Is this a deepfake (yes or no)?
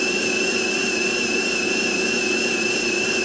no